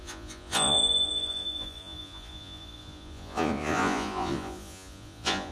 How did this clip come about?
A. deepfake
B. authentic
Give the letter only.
A